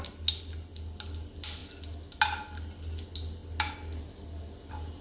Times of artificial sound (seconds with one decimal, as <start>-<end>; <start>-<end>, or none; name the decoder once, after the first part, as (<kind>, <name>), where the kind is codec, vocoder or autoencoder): none